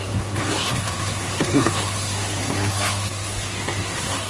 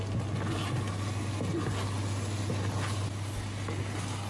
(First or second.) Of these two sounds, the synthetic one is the first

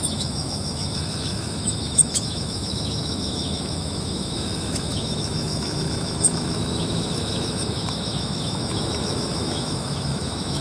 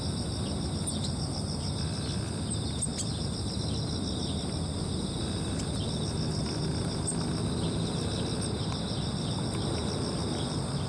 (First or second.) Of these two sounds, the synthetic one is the first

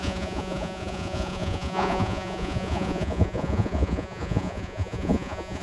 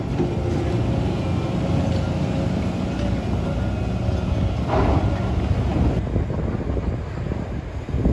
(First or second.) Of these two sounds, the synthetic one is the first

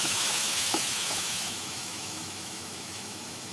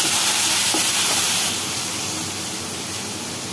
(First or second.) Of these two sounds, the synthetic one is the first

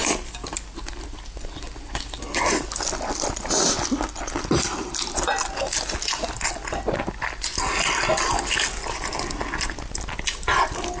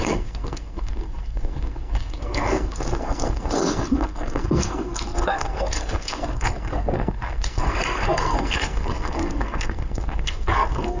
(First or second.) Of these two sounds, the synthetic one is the second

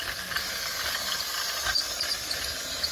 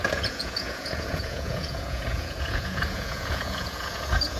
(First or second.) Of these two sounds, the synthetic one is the second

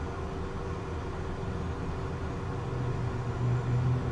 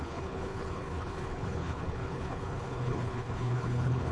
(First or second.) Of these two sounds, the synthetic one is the second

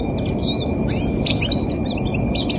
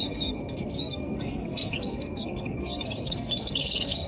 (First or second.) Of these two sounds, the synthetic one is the second